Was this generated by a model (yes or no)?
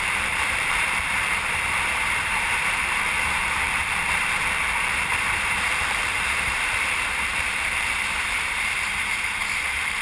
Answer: yes